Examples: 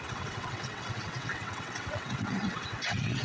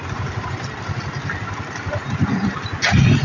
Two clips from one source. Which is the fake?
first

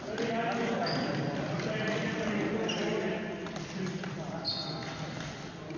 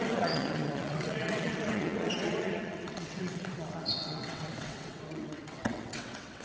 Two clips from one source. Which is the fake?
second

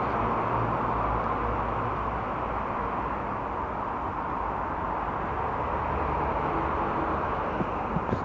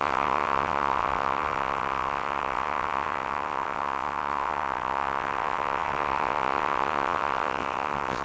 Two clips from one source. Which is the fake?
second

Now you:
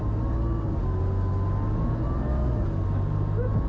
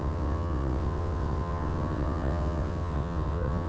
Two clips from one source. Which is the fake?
second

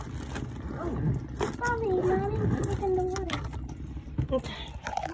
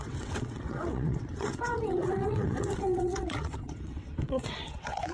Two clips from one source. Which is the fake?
second